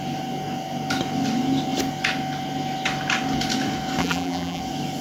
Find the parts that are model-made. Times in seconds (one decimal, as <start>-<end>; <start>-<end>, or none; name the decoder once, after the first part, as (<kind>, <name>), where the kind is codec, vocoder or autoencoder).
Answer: 4.0-4.6 (vocoder, BigVGAN v2)